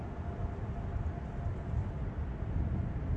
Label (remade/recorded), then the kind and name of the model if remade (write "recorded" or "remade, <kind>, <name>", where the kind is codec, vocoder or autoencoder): recorded